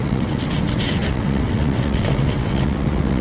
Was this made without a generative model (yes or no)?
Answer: no